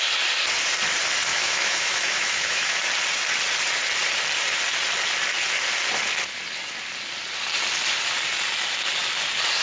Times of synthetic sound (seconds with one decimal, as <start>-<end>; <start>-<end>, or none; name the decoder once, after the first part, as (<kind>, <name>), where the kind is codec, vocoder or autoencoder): 1.3-2.8 (autoencoder, DAC-VAE)